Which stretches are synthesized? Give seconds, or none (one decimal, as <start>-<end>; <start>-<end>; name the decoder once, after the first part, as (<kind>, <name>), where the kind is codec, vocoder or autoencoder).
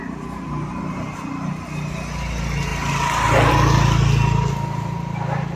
none